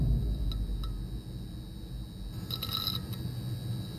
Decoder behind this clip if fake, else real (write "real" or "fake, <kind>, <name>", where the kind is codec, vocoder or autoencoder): real